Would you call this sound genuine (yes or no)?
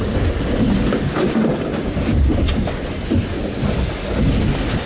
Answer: yes